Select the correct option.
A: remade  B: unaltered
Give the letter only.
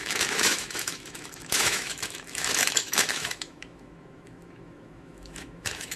A